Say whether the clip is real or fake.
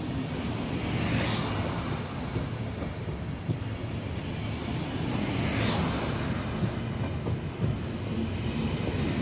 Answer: real